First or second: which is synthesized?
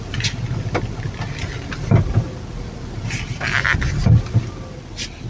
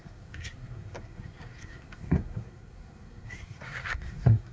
second